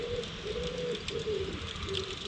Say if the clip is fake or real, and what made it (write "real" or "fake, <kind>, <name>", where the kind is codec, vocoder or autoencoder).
real